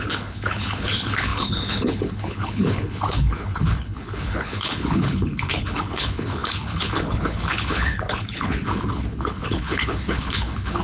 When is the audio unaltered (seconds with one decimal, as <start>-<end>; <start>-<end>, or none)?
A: none